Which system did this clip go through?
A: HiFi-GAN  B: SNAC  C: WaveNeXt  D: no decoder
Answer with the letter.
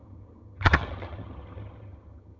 A